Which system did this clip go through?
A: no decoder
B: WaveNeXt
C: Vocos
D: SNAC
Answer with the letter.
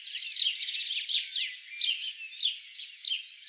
A